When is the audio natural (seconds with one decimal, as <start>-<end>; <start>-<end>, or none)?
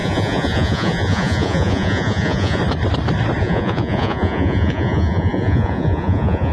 2.6-3.4